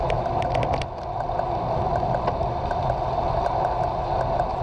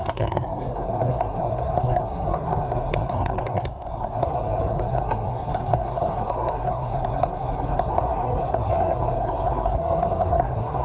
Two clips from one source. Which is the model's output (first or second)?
second